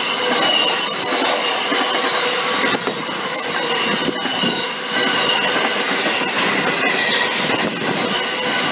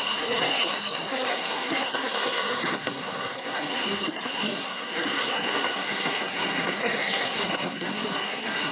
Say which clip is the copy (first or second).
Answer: second